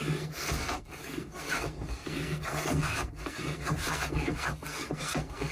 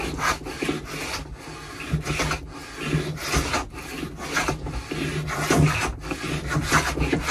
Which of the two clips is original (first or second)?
second